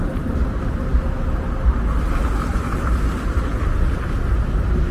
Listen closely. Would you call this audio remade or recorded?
recorded